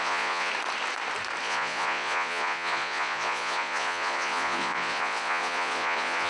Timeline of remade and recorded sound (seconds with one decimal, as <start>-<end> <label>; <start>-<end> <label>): 0.0-0.5 remade; 0.5-1.4 recorded; 1.4-6.3 remade